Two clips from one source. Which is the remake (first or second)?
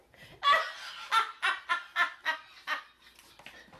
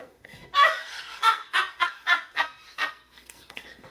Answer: second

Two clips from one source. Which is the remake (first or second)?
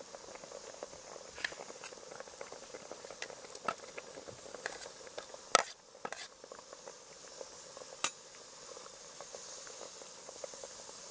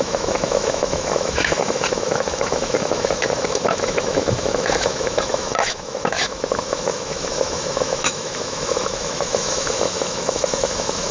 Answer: second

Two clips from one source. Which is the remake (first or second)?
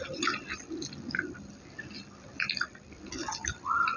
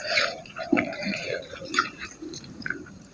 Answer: second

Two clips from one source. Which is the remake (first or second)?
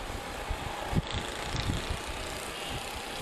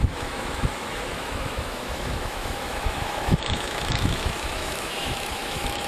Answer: second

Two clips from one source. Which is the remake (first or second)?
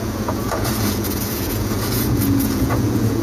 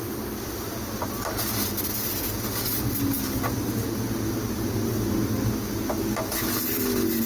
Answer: first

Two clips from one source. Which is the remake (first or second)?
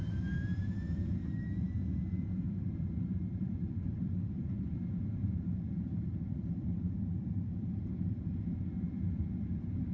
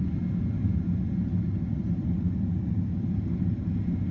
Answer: first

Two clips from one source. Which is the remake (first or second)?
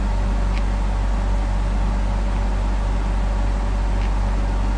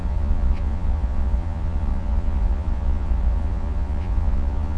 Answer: second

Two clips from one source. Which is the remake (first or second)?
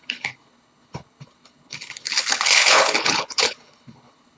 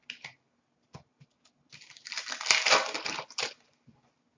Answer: first